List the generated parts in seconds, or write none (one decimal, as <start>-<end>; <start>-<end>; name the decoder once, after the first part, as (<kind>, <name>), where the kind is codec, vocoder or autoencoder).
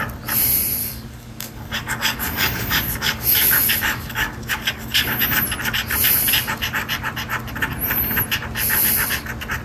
0.8-5.2 (codec, DAC)